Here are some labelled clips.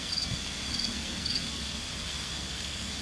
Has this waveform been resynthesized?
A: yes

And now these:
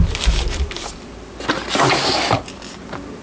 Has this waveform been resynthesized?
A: no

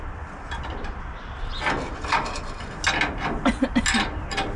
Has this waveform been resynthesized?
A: no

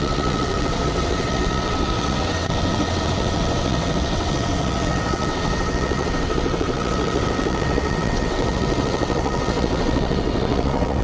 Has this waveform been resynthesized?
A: yes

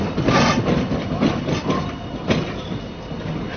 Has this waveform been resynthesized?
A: no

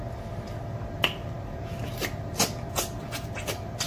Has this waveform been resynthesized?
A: no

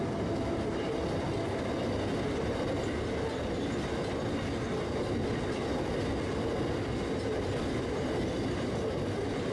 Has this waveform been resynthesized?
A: no